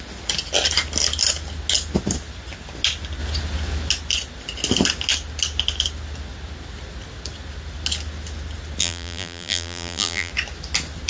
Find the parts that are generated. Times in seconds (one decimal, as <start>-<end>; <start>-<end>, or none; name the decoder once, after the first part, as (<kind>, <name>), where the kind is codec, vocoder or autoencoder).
8.8-10.3 (vocoder, BigVGAN v2)